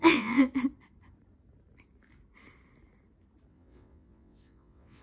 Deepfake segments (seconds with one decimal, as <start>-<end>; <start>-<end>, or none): 0.0-0.5; 3.5-5.0

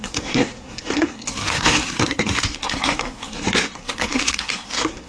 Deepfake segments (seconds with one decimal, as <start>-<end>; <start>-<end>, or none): 0.0-5.1

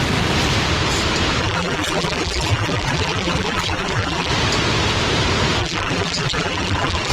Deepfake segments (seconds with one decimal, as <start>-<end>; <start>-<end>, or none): 1.4-4.3; 5.6-7.1

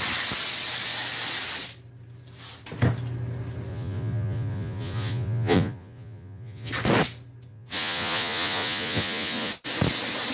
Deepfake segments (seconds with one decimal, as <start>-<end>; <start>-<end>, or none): 3.7-6.7; 7.5-9.5